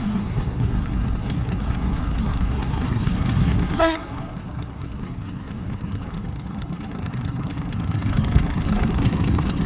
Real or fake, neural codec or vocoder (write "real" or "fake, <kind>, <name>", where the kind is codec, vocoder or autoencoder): fake, codec, SNAC